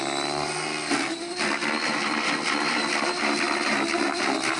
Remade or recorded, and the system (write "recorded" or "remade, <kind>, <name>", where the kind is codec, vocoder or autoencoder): recorded